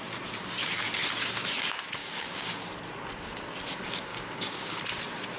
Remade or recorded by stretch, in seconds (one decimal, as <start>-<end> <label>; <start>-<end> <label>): 0.0-2.0 recorded; 2.0-2.6 remade; 2.6-4.1 recorded; 4.1-4.8 remade; 4.8-5.4 recorded